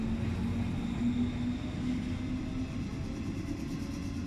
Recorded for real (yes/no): yes